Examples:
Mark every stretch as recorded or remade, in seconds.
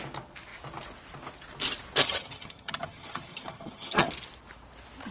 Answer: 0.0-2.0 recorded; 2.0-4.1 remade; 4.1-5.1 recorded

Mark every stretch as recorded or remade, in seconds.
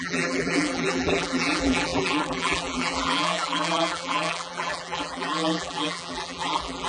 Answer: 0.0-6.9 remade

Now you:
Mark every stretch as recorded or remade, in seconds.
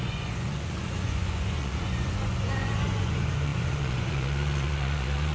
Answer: 0.0-5.3 remade